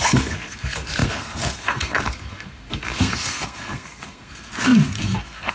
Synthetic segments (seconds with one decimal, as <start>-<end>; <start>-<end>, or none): 0.0-5.5